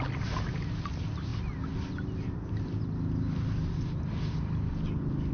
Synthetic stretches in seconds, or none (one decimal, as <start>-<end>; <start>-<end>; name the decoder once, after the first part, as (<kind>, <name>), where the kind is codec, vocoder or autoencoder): none